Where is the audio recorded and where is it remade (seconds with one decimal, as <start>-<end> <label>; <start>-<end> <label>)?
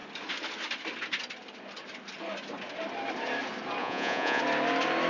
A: 0.0-3.8 recorded; 3.8-4.4 remade; 4.4-5.1 recorded